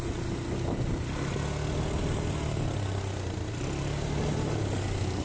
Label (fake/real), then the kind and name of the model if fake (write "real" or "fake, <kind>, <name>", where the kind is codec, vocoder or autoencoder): real